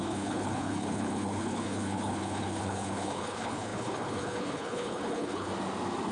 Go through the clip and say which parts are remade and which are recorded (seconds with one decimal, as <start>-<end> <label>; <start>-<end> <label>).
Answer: 0.0-5.5 remade; 5.5-6.1 recorded